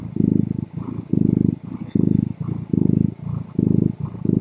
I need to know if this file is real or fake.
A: real